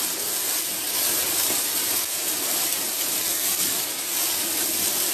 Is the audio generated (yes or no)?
no